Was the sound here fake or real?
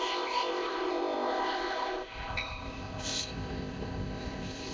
fake